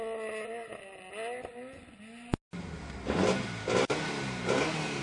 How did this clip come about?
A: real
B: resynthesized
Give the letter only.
A